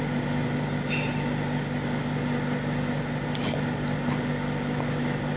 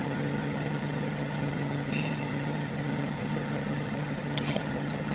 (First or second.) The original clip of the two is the first